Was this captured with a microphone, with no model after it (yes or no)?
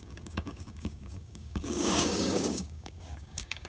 no